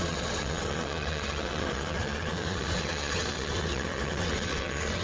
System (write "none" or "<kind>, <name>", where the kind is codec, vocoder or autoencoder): vocoder, WaveNeXt